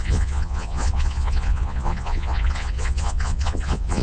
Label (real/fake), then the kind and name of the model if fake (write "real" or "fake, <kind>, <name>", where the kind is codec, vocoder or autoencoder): fake, vocoder, Vocos